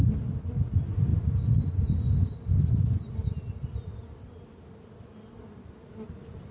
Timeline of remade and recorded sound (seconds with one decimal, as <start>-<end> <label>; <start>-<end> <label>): 0.0-6.5 recorded